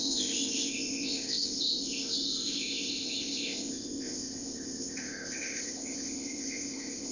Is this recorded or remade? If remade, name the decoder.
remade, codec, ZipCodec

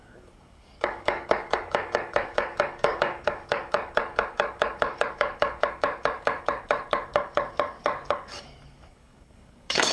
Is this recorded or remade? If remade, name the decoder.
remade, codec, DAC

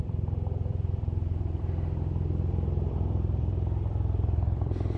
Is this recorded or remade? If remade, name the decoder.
remade, vocoder, BigVGAN v2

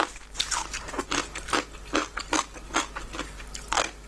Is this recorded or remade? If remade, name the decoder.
recorded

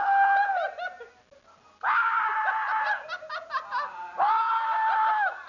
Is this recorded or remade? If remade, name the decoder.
recorded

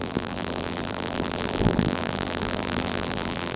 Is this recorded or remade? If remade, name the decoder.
remade, vocoder, BigVGAN v2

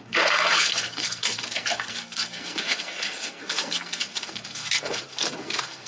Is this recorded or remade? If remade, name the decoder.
remade, codec, SNAC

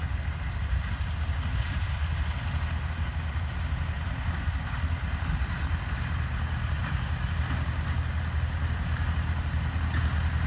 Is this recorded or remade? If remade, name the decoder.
recorded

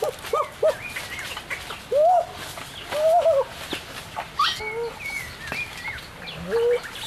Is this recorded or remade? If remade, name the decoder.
recorded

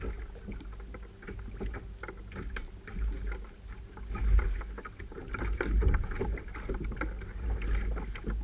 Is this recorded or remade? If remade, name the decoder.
recorded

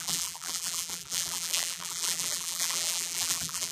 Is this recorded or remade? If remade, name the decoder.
remade, vocoder, BigVGAN v2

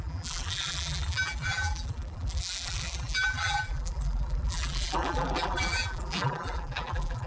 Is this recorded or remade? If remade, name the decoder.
remade, vocoder, BigVGAN v2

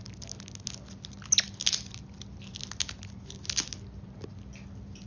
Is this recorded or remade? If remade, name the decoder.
recorded